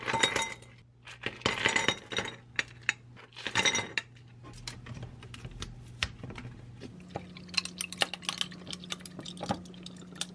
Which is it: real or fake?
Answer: real